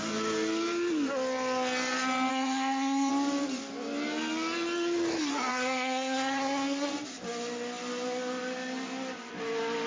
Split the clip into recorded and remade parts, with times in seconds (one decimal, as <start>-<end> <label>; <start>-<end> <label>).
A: 0.0-2.3 recorded; 2.3-3.1 remade; 3.1-5.5 recorded; 5.5-6.9 remade; 6.9-9.9 recorded